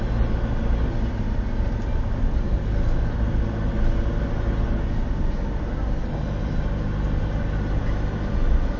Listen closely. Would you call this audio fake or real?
real